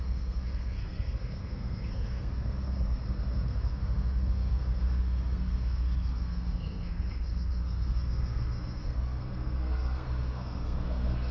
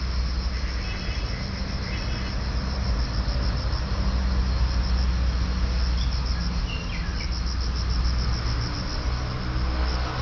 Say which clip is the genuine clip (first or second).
second